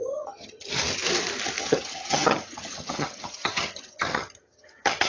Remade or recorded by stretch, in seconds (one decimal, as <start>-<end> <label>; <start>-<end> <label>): 0.0-0.7 remade; 0.7-1.6 recorded; 1.6-5.1 remade